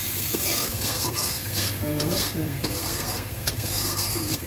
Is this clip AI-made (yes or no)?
yes